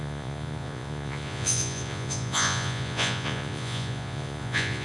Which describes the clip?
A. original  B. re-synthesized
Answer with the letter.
B